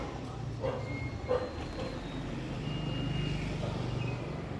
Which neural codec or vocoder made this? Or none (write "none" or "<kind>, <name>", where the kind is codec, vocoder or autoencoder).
none